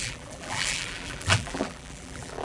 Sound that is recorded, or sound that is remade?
remade